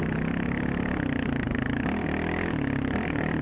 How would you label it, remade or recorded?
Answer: recorded